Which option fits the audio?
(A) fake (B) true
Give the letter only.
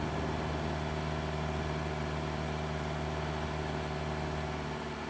B